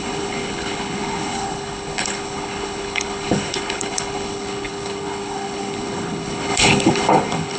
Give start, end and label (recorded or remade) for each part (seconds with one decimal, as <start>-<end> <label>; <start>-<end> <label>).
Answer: 0.0-7.6 remade